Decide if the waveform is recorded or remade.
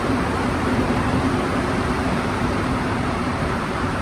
remade